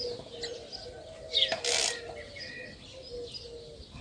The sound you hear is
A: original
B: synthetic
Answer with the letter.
A